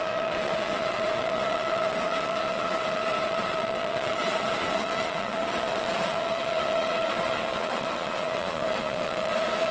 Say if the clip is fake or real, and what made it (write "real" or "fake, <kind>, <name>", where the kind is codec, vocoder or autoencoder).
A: fake, vocoder, Vocos